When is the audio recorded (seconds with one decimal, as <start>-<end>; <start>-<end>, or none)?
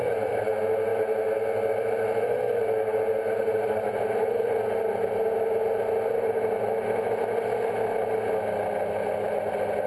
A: 0.0-9.9